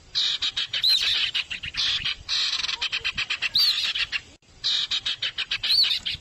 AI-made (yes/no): no